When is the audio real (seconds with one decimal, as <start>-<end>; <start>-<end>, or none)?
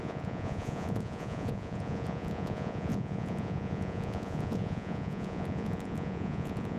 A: none